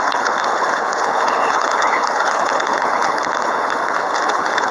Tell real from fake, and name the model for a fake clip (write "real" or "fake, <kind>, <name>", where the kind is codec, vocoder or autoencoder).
fake, codec, HILCodec